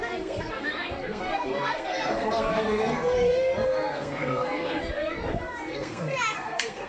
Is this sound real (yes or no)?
no